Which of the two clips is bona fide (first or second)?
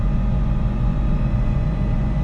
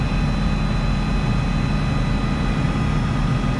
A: second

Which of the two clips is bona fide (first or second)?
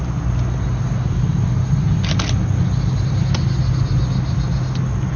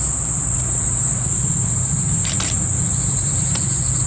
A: first